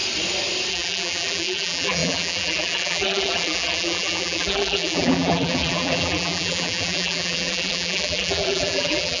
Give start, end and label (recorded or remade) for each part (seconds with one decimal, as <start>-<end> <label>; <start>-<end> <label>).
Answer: 0.0-0.7 recorded; 0.7-9.2 remade

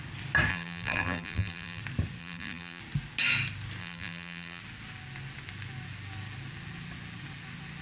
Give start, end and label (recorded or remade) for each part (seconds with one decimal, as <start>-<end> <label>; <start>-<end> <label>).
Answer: 0.0-0.5 recorded; 0.5-1.8 remade; 1.8-2.2 recorded; 2.2-2.8 remade; 2.8-3.8 recorded; 3.8-4.6 remade; 4.6-7.8 recorded

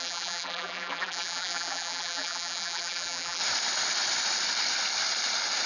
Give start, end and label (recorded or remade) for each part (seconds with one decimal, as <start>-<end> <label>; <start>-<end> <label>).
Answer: 0.0-3.4 remade; 3.4-5.7 recorded

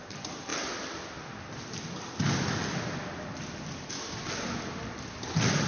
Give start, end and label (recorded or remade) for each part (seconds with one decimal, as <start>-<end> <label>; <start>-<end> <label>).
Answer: 0.0-5.7 recorded

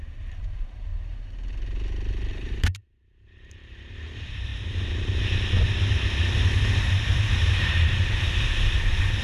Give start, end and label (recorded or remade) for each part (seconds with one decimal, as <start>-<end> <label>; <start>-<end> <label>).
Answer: 0.0-0.9 remade; 0.9-2.3 recorded; 2.3-4.5 remade; 4.5-6.8 recorded; 6.8-9.2 remade